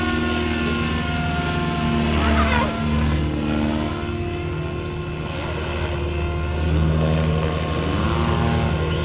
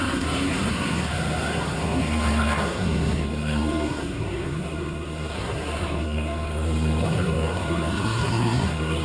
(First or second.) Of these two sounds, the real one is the first